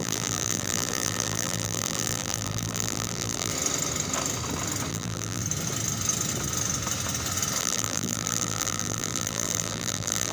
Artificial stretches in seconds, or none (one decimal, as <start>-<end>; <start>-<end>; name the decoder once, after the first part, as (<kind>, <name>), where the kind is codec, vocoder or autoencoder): 0.0-3.5 (vocoder, BigVGAN v2); 4.9-5.4; 7.6-10.3